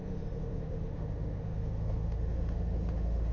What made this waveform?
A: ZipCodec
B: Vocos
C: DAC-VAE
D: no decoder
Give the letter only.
C